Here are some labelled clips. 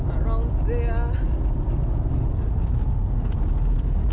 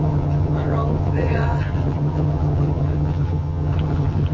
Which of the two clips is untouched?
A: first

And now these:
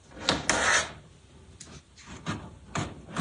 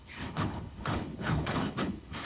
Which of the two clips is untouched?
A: first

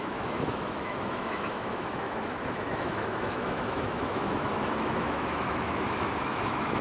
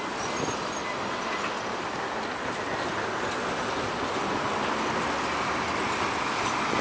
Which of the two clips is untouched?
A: second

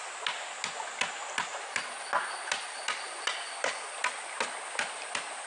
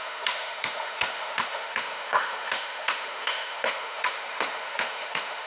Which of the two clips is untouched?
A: first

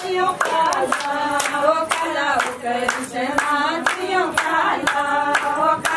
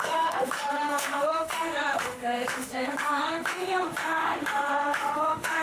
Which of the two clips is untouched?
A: first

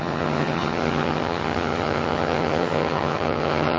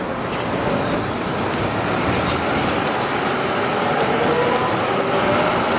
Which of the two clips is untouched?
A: second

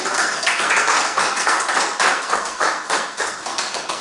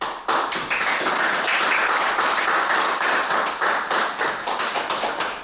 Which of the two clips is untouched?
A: second